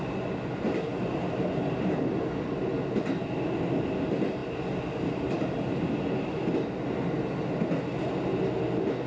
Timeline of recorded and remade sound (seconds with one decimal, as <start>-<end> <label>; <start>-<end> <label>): 0.0-9.1 recorded